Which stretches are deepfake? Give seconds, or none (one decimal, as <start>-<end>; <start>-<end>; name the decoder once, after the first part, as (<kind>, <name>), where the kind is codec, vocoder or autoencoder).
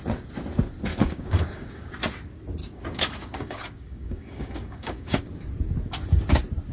0.9-1.9 (codec, DAC); 2.6-5.3